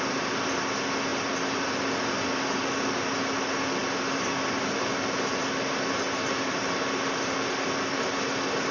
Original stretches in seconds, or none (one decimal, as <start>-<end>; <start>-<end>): 0.0-8.7